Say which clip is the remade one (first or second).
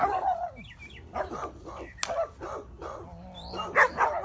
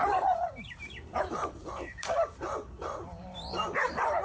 second